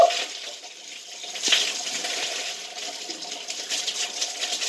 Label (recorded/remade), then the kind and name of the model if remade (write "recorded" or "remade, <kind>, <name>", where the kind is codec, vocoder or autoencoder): recorded